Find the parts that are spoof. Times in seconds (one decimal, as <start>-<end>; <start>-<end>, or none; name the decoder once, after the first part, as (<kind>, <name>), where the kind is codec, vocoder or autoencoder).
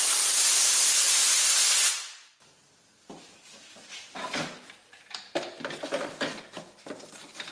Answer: none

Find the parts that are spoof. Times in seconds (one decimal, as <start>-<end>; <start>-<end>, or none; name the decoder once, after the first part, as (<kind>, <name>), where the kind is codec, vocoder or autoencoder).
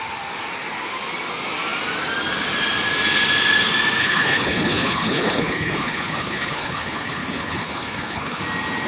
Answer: 4.0-8.4 (codec, HILCodec)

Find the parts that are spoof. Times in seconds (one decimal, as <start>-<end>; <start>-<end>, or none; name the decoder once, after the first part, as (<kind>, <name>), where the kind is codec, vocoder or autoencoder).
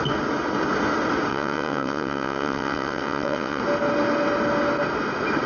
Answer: 1.3-3.6 (vocoder, WaveNeXt)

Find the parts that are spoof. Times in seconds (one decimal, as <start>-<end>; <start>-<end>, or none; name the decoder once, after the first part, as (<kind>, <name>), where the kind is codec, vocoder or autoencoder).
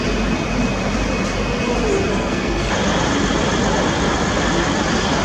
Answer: 2.1-2.7 (codec, SNAC)